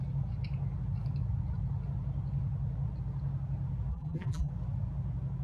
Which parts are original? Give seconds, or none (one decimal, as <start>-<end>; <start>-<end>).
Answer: 0.0-3.9; 4.5-5.4